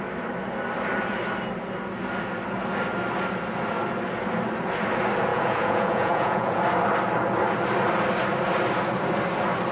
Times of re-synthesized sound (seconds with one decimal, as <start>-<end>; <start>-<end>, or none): 5.3-6.6